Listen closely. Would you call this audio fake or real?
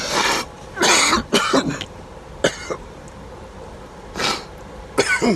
real